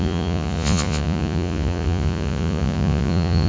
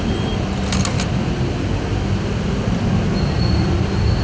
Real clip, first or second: second